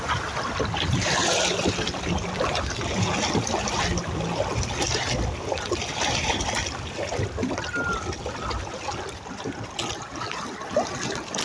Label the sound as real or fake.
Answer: real